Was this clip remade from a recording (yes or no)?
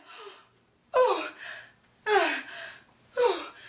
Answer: no